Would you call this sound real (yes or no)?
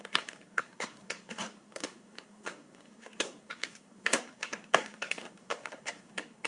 no